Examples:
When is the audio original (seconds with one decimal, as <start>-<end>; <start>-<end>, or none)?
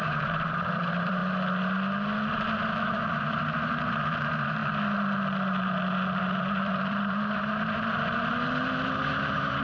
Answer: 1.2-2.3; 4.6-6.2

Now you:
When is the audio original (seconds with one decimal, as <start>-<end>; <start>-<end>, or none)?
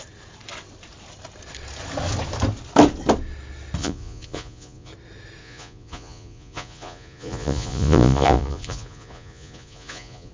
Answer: 0.0-3.8; 4.9-5.4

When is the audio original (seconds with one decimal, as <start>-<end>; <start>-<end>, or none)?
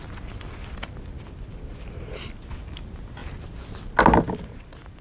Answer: 0.0-5.0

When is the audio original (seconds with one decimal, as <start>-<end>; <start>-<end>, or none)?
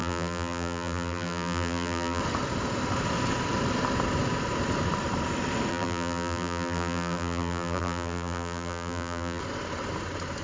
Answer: 2.2-5.7; 9.4-10.4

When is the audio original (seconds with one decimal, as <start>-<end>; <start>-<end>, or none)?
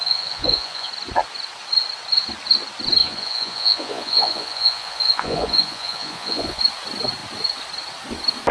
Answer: 0.9-3.0; 6.6-8.5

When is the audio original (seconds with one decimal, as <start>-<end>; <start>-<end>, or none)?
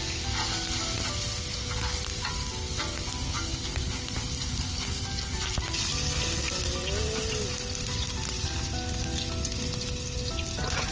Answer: 0.0-10.9